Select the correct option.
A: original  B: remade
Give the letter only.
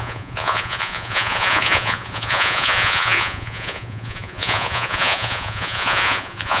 B